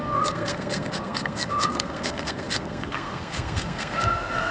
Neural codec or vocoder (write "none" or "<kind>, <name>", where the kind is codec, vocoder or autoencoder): codec, SNAC